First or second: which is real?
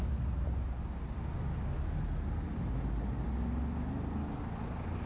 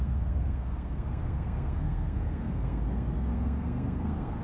first